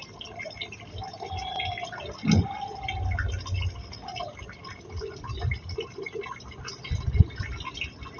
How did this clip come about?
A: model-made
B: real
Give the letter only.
B